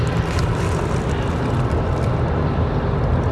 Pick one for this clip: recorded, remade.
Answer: recorded